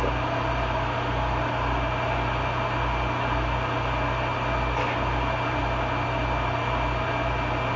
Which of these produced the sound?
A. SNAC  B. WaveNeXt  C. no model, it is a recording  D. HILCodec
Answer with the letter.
C